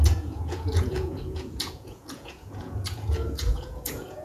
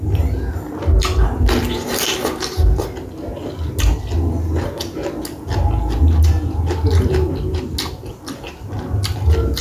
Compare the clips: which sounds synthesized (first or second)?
first